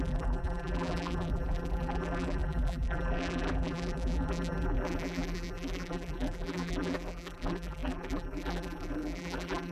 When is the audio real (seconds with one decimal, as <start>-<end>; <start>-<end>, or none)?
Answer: none